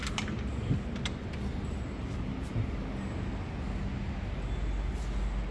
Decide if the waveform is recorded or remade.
recorded